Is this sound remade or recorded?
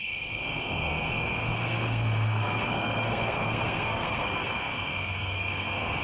remade